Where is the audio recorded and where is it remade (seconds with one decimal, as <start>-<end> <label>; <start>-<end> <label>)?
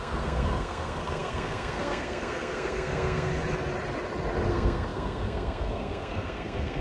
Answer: 0.0-3.3 remade; 3.3-4.5 recorded; 4.5-6.8 remade